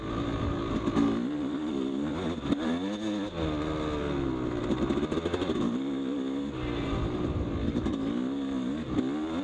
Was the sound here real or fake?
real